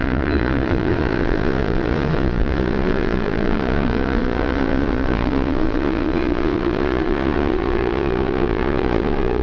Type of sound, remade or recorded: remade